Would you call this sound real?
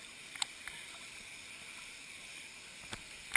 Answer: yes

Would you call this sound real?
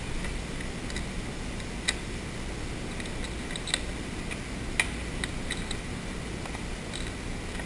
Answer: yes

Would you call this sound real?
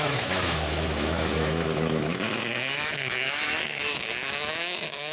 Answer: no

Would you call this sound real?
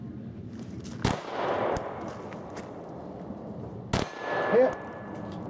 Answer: yes